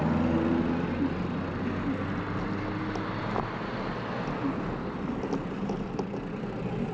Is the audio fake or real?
real